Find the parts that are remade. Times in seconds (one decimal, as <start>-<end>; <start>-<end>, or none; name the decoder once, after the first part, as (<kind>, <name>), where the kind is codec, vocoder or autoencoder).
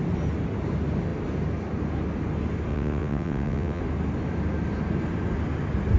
2.7-3.8 (vocoder, WaveNeXt)